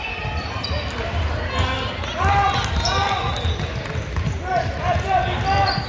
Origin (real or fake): real